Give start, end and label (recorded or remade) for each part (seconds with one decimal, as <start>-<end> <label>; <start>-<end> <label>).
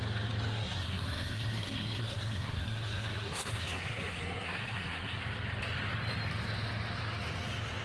0.0-0.5 recorded; 0.5-5.2 remade; 5.2-7.8 recorded